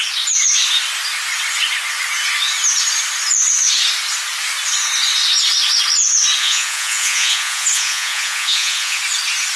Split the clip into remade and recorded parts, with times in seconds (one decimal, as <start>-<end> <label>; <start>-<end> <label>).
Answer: 0.0-6.4 recorded; 6.4-9.0 remade; 9.0-9.6 recorded